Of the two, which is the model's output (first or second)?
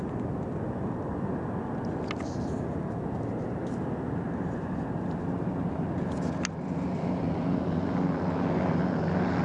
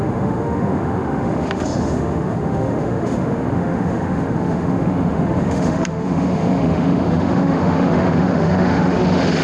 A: second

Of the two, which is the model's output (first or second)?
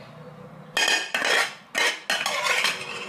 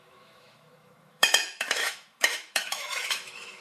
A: second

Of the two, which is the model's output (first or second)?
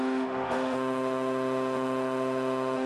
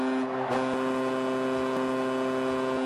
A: first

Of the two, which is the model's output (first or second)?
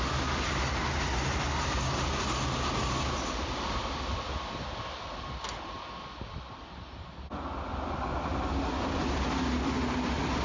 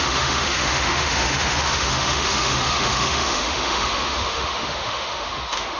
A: second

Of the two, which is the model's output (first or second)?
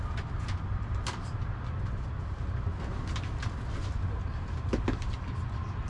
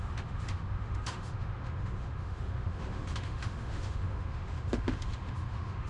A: second